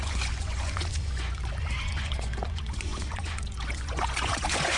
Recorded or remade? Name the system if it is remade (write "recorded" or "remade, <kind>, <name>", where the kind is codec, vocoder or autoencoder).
remade, vocoder, Vocos